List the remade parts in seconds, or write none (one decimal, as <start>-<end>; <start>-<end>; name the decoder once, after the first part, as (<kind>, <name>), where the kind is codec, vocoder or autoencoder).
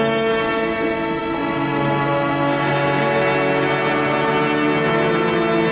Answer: none